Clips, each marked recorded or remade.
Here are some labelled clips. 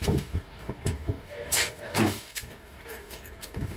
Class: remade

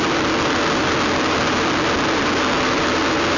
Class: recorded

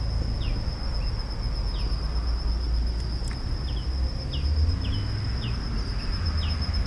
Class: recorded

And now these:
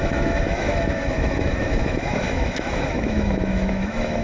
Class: remade